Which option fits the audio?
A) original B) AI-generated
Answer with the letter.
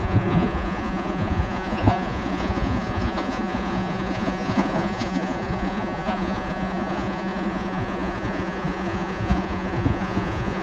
B